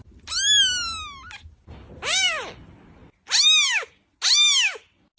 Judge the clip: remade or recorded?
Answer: recorded